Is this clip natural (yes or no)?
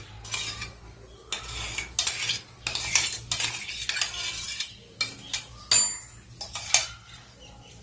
yes